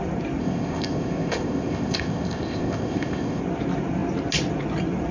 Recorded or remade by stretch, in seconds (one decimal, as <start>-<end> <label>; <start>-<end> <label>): 0.0-0.4 recorded; 0.4-3.4 remade; 3.4-5.1 recorded